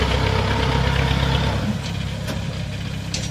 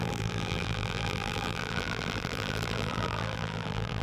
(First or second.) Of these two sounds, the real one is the first